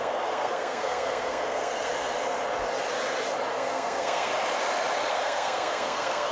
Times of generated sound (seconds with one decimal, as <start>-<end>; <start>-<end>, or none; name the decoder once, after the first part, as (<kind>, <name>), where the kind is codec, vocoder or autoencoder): 0.0-1.9 (codec, SNAC); 3.5-4.3; 5.1-6.3